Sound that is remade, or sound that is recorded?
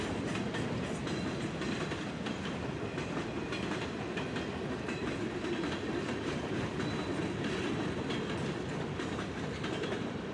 remade